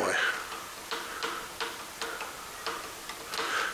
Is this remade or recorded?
recorded